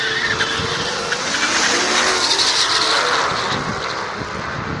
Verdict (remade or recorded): recorded